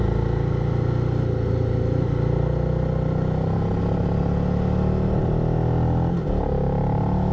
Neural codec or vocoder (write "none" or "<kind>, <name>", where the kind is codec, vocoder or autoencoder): none